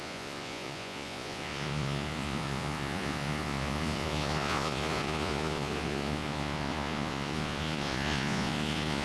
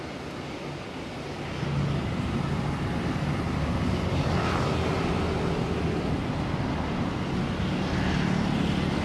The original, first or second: second